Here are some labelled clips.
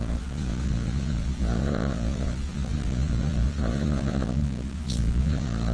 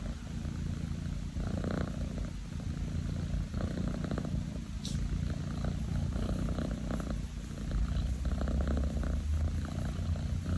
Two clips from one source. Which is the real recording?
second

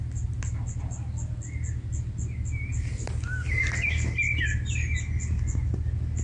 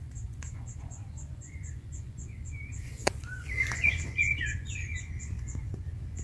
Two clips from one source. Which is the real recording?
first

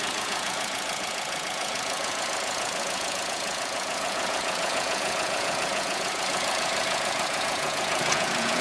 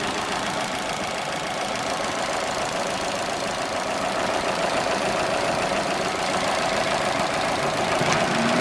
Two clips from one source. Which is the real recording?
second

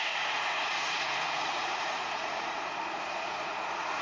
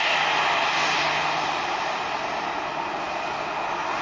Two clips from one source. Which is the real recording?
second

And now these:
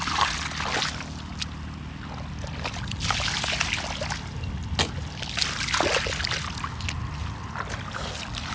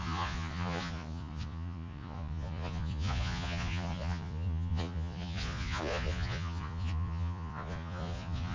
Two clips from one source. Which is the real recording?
first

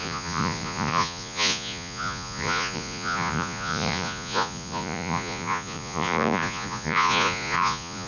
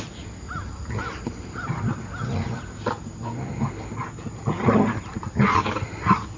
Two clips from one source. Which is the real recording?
second